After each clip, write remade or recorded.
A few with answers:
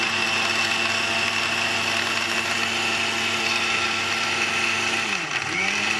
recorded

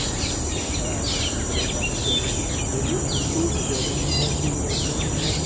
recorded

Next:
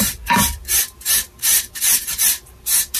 remade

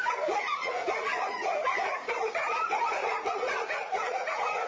remade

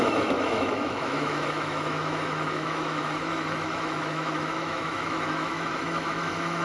remade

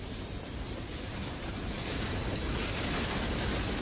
recorded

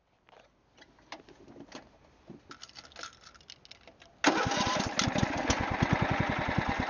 recorded